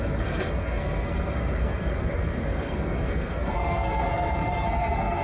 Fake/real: fake